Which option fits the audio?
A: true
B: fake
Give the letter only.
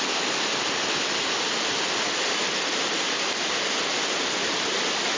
A